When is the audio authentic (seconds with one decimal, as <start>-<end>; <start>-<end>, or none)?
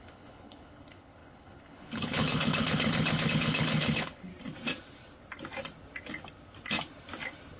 4.3-7.6